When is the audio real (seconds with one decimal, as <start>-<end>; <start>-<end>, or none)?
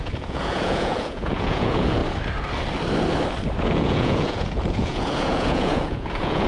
2.0-3.6